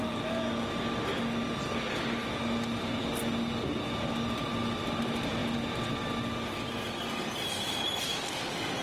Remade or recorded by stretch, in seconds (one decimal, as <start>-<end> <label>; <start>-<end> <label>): 0.0-8.8 recorded